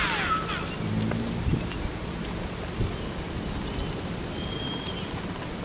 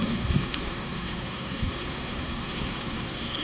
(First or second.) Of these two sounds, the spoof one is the second